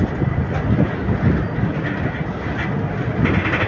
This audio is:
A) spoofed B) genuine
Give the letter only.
B